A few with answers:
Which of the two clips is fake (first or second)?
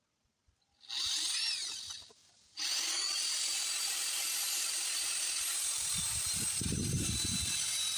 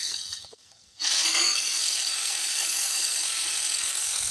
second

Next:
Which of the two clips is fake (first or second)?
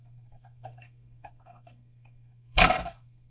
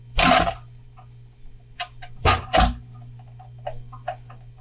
first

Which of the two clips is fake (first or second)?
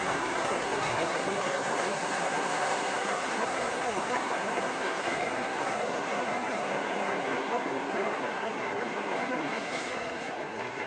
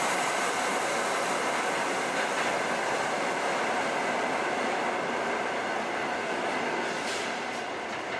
first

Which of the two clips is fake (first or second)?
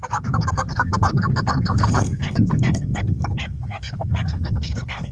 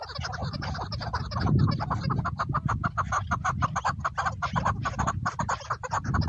first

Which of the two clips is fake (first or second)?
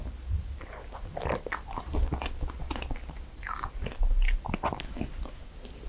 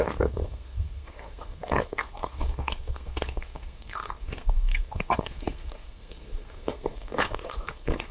second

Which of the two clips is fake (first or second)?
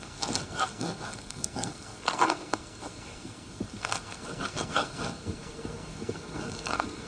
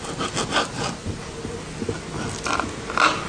first